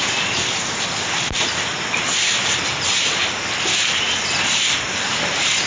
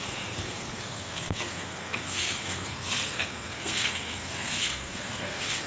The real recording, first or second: first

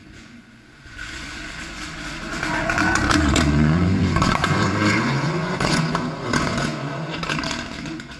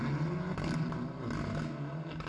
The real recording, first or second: second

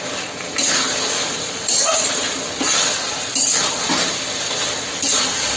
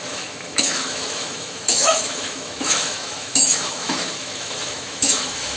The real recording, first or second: first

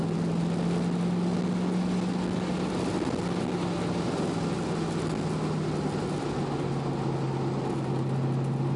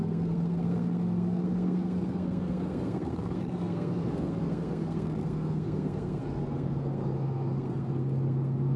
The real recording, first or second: first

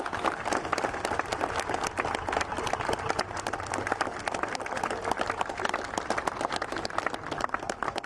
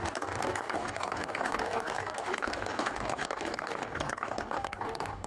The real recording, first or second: first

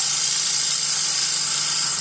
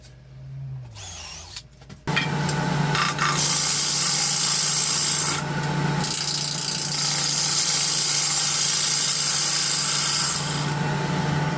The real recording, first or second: second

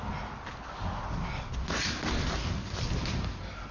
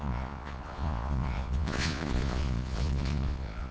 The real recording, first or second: first